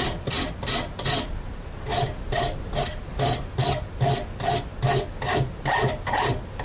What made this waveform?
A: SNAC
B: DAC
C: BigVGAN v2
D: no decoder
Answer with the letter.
D